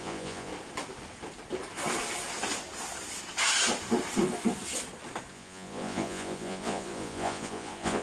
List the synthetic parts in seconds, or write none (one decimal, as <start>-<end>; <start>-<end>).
0.0-0.5; 5.3-8.0